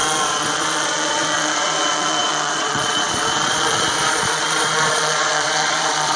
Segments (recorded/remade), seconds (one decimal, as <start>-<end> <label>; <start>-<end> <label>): 0.0-6.2 remade